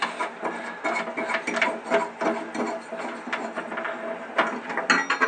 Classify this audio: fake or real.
real